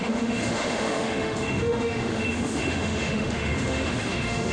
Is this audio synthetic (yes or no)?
yes